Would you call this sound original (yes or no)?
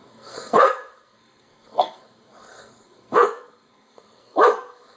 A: no